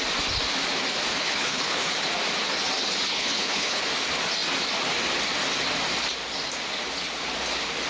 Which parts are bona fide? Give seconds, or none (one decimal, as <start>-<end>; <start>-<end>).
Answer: 0.0-1.1; 1.9-3.1; 3.8-7.9